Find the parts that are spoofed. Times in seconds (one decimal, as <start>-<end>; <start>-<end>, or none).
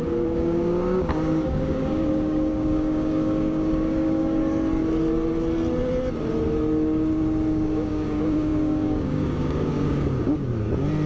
0.0-4.4; 7.5-10.5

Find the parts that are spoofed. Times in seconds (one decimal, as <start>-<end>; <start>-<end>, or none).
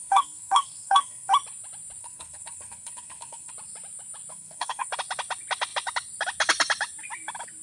0.0-1.3; 2.0-3.5; 4.3-4.9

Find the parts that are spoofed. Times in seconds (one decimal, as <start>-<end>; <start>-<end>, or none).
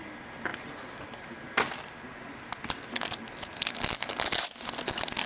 none